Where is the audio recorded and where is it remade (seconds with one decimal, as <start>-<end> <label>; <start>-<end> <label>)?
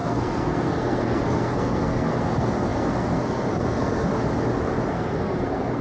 0.0-4.1 remade; 4.1-4.9 recorded; 4.9-5.8 remade